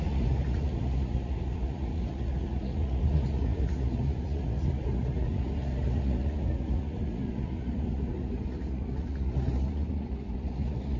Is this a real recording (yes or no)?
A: no